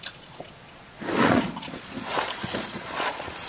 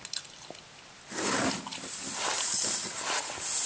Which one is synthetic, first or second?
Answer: first